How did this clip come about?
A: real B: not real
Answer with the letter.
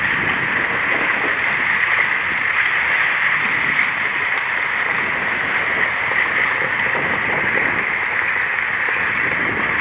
A